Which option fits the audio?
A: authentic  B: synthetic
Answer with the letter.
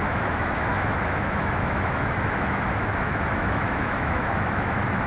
B